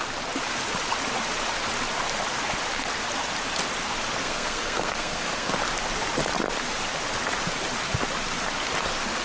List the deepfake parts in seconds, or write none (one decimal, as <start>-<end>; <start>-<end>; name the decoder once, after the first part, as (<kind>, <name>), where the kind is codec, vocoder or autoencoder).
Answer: 4.2-5.5 (codec, SNAC)